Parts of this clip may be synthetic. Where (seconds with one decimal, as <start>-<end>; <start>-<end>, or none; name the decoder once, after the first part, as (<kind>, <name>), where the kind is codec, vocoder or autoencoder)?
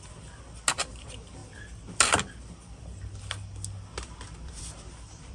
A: none